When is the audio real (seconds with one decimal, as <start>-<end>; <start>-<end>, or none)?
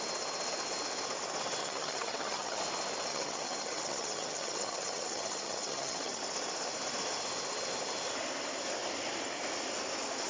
0.0-1.6; 2.6-3.1; 6.2-10.3